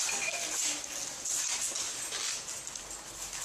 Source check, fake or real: real